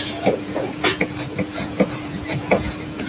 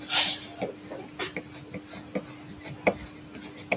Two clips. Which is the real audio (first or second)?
second